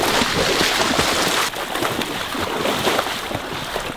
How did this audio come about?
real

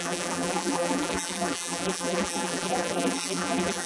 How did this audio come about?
fake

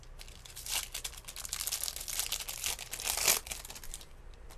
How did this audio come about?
real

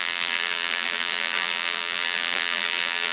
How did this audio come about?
fake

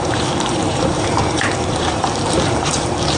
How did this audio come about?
fake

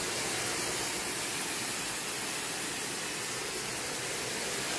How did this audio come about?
real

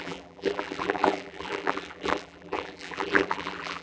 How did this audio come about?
fake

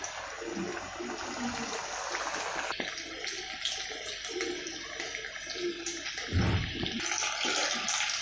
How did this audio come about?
real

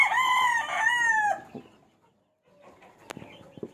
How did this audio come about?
real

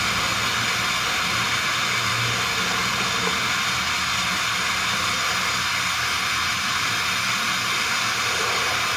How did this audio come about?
real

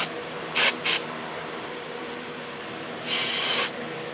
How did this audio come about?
fake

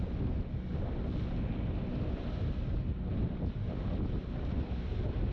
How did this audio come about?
real